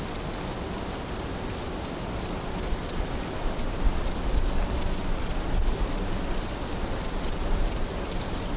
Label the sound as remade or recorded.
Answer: recorded